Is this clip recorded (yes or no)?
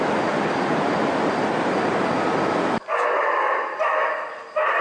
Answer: yes